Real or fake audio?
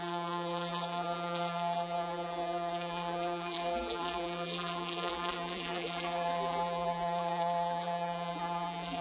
fake